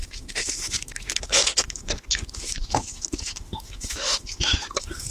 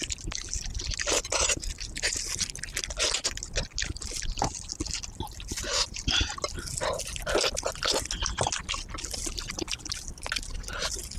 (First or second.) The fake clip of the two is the first